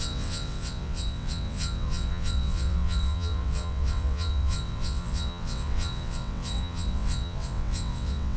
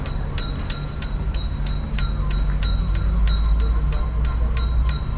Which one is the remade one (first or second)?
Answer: first